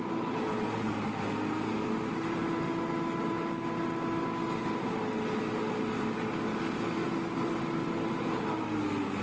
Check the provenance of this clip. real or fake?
real